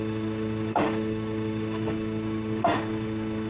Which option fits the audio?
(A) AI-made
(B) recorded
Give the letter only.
A